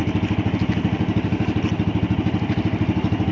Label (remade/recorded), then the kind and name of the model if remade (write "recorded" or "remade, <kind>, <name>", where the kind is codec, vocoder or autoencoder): recorded